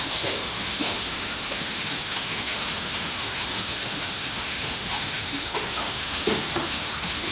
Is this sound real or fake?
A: fake